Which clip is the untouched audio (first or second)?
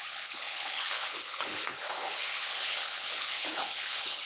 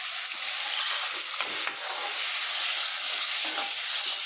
second